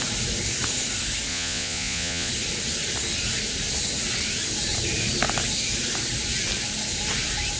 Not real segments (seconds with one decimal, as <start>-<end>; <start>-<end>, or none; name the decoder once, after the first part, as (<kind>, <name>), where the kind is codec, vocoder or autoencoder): 1.3-2.3 (vocoder, Vocos)